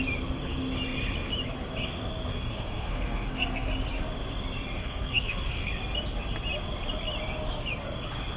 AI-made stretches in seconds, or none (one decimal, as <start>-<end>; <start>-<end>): 2.3-3.7; 4.8-5.7